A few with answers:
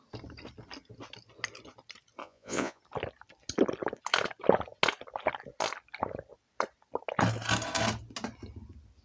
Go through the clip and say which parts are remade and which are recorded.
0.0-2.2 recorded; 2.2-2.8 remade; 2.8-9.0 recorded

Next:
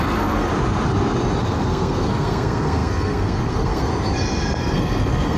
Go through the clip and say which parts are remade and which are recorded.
0.0-0.5 remade; 0.5-1.4 recorded; 1.4-3.9 remade; 3.9-4.6 recorded; 4.6-5.4 remade

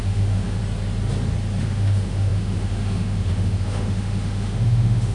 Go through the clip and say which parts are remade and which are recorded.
0.0-0.6 remade; 0.6-1.6 recorded; 1.6-5.1 remade

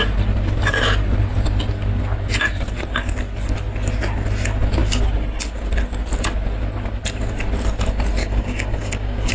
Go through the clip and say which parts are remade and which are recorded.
0.0-8.2 recorded; 8.2-9.3 remade

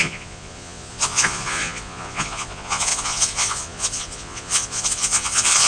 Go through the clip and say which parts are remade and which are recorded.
0.0-5.7 remade

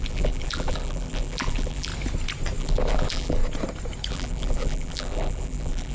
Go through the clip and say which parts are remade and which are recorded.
0.0-1.9 remade; 1.9-2.6 recorded; 2.6-3.4 remade; 3.4-4.1 recorded; 4.1-5.9 remade

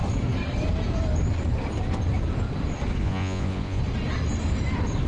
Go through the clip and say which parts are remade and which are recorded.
0.0-3.0 recorded; 3.0-3.8 remade; 3.8-5.1 recorded

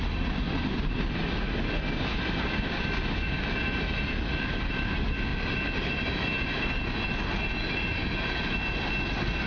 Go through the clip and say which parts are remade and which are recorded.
0.0-9.5 recorded